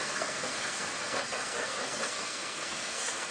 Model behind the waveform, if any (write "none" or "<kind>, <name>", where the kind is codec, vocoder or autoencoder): codec, SNAC